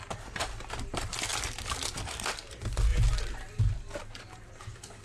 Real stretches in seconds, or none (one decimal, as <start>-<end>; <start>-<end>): none